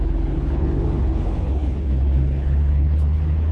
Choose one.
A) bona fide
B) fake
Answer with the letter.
B